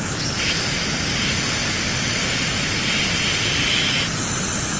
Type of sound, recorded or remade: recorded